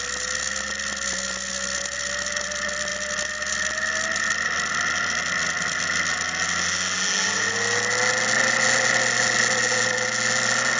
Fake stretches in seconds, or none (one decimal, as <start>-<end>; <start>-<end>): none